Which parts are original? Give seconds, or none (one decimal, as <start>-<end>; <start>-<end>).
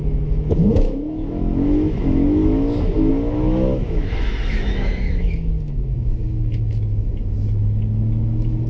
none